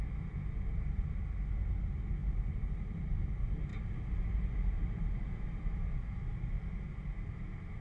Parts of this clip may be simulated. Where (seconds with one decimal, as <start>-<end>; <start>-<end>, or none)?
2.2-3.3; 3.7-6.4